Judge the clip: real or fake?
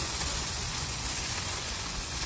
fake